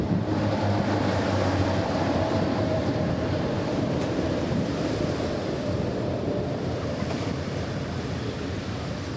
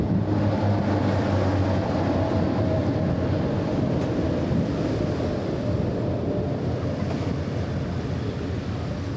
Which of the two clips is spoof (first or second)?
first